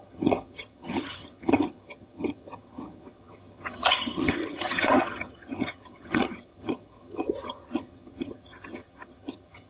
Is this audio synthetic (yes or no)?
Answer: yes